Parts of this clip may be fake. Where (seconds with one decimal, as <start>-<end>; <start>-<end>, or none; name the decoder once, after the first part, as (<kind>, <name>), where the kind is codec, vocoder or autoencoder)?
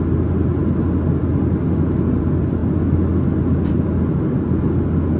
none